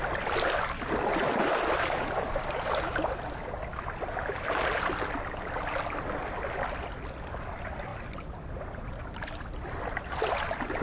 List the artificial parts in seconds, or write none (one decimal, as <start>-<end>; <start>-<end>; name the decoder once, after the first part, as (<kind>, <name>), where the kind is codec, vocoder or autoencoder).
none